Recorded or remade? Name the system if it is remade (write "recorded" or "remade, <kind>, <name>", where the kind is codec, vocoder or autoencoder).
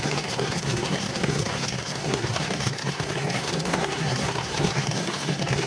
remade, codec, SNAC